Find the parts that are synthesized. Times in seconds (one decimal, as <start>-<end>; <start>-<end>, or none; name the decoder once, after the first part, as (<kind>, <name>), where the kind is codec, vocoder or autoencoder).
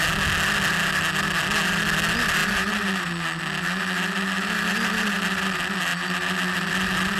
none